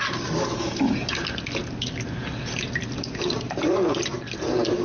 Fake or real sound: real